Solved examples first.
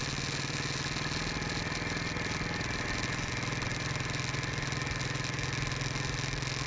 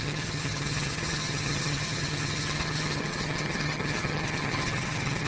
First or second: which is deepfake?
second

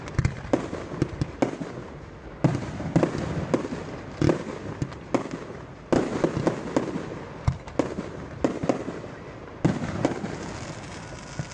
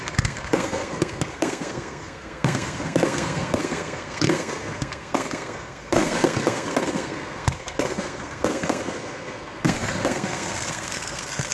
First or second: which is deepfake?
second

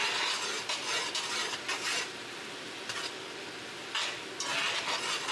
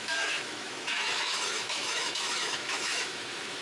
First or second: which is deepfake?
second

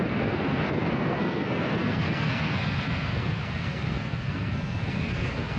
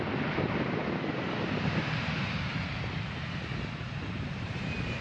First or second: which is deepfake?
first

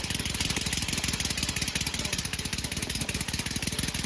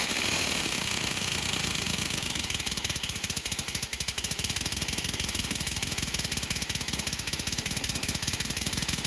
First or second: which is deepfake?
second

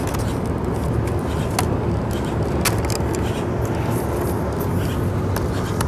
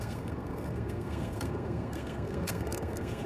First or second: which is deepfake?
second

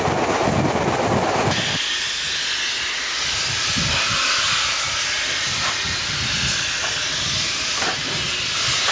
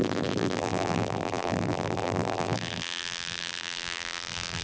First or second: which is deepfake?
second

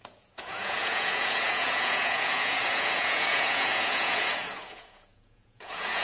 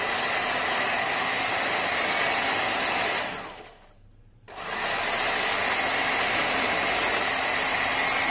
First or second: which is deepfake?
first